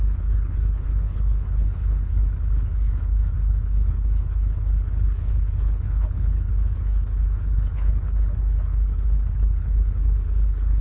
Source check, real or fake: fake